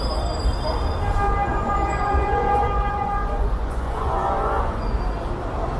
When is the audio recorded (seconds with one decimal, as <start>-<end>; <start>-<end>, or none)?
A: 0.0-1.5; 5.0-5.8